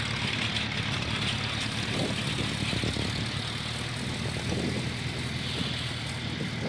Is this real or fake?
real